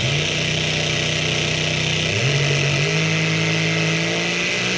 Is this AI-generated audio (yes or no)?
no